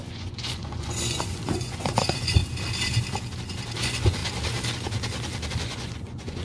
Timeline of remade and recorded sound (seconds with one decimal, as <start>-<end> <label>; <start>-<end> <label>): 0.0-2.4 remade; 2.4-3.8 recorded; 3.8-4.2 remade; 4.2-5.5 recorded; 5.5-6.4 remade